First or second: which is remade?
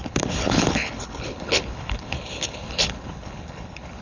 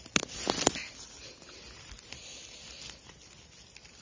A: first